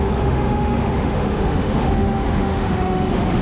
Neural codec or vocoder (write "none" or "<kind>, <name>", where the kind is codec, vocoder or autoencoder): autoencoder, DAC-VAE